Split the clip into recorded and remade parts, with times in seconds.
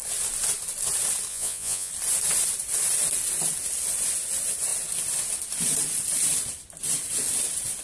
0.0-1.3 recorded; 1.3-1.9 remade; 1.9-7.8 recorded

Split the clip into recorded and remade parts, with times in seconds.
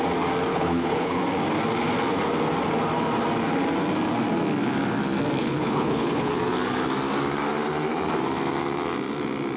0.0-0.5 recorded; 0.5-1.2 remade; 1.2-5.4 recorded; 5.4-6.3 remade; 6.3-9.6 recorded